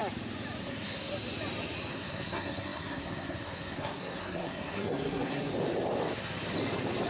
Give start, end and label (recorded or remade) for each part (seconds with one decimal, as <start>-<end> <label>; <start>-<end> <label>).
0.0-0.6 recorded; 0.6-1.1 remade; 1.1-1.9 recorded; 1.9-5.5 remade; 5.5-7.1 recorded